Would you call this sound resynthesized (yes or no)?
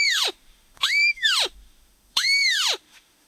yes